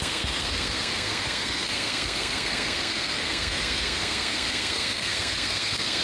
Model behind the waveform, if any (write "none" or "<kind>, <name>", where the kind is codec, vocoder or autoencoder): codec, SNAC